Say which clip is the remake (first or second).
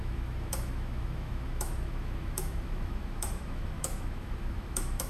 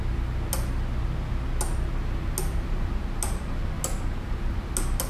first